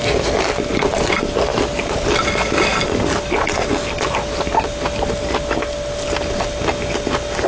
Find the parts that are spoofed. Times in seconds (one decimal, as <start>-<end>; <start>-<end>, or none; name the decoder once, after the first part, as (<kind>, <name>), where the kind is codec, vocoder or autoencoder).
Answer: none